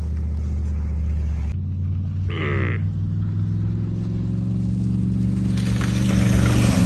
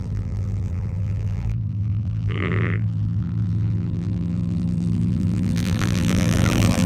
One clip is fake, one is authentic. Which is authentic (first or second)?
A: first